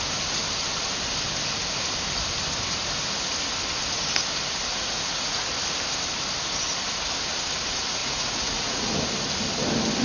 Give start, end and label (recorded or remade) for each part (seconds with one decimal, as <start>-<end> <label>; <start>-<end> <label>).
0.0-4.7 recorded; 4.7-5.5 remade; 5.5-8.0 recorded; 8.0-8.9 remade; 8.9-10.0 recorded